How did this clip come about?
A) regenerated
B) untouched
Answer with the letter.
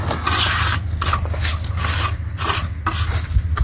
B